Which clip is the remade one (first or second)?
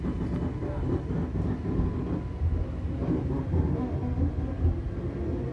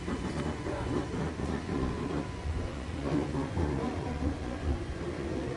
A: second